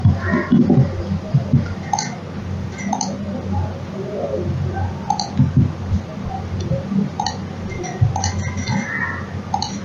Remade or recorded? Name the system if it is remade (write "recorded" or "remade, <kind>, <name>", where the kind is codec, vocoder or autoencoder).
recorded